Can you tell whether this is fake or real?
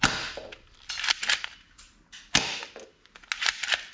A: real